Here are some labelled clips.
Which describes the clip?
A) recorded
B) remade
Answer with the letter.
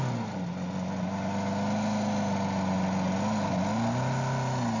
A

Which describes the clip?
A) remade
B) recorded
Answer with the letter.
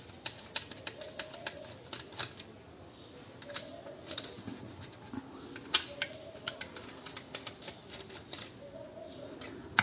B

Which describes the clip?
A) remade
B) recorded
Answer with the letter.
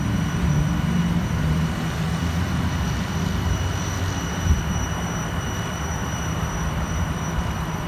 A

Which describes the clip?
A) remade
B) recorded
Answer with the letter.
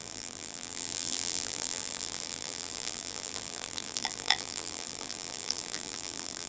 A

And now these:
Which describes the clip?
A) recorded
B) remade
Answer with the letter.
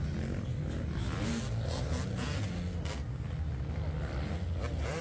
A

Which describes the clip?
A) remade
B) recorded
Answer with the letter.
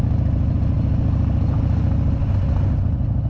B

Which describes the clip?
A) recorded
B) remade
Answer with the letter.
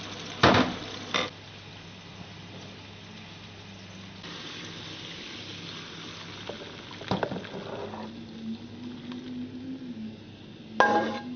A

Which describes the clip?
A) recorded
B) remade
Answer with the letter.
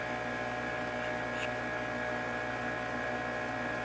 A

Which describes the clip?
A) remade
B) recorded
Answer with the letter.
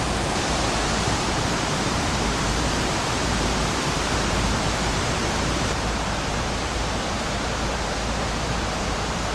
A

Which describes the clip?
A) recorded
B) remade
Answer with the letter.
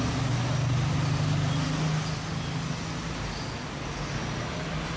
A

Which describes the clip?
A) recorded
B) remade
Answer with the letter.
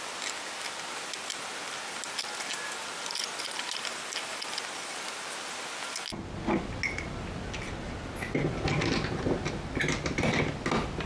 A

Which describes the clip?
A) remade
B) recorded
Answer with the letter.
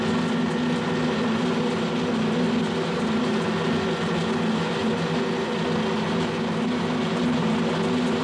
B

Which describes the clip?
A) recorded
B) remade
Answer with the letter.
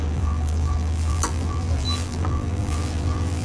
B